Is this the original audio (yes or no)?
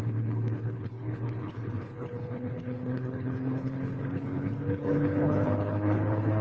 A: no